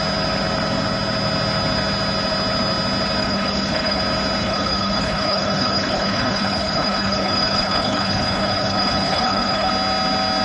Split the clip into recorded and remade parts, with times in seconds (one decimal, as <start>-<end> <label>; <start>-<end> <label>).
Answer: 0.0-3.2 recorded; 3.2-4.0 remade; 4.0-4.4 recorded; 4.4-9.7 remade; 9.7-10.4 recorded